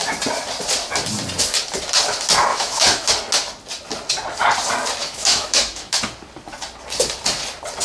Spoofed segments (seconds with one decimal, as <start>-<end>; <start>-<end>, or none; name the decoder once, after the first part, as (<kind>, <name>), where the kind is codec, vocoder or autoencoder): 2.5-3.1 (autoencoder, DAC-VAE); 5.0-6.0

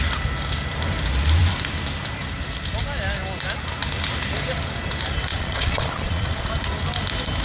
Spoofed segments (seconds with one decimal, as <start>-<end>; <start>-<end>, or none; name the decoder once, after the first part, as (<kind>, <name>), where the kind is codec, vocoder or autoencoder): 5.3-6.5 (vocoder, Vocos)

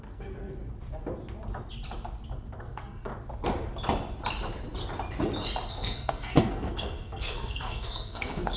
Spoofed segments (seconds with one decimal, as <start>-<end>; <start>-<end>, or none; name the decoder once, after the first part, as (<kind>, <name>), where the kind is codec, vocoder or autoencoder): 0.0-0.6 (codec, SNAC); 2.6-3.1; 5.7-8.6

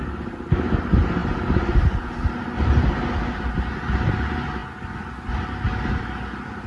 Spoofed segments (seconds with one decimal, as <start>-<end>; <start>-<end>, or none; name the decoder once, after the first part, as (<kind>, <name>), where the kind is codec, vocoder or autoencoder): none

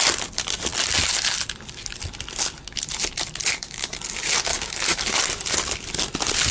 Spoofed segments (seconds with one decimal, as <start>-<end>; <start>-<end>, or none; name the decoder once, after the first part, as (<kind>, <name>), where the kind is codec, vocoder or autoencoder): 3.5-4.0 (codec, DAC); 4.5-5.2

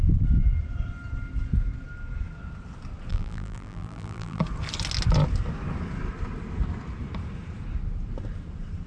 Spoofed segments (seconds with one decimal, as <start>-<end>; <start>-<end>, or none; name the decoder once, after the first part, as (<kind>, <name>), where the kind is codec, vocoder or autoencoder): 3.1-4.4 (vocoder, BigVGAN v2)

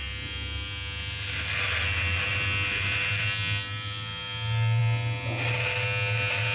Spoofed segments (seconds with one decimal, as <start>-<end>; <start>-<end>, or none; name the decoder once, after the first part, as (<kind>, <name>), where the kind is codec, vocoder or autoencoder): none

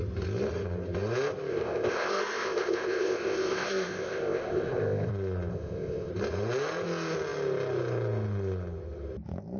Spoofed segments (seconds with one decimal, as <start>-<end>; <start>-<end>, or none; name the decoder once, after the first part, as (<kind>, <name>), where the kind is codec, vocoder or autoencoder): 1.5-5.1 (codec, ZipCodec); 5.5-6.1